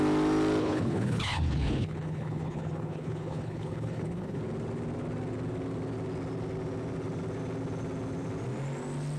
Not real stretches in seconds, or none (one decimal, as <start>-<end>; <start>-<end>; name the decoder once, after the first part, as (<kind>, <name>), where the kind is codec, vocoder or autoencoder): 0.6-4.4 (codec, HILCodec)